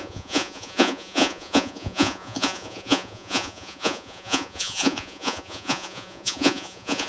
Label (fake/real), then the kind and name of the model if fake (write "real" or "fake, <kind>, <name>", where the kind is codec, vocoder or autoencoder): fake, vocoder, Vocos